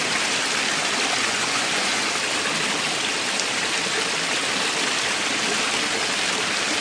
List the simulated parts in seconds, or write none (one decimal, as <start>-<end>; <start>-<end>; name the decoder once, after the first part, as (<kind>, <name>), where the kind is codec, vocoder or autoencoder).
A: 1.2-2.1 (vocoder, Vocos)